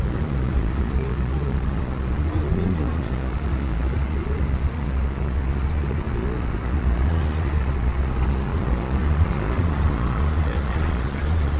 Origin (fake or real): fake